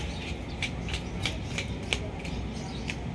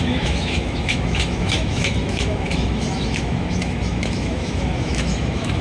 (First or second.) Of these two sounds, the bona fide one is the first